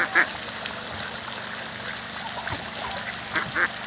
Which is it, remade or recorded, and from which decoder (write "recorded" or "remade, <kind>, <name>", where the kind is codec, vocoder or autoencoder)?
recorded